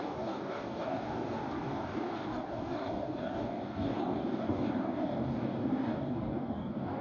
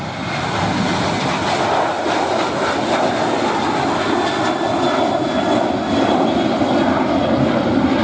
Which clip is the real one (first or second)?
second